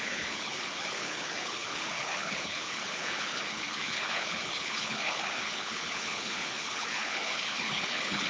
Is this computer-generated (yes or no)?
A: yes